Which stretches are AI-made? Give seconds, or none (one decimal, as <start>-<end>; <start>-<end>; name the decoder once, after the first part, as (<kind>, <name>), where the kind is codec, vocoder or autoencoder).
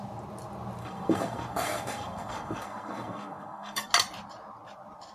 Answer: 0.8-3.9 (codec, SNAC)